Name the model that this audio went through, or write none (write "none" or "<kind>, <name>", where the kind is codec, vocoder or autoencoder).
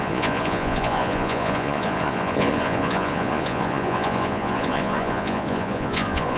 vocoder, Vocos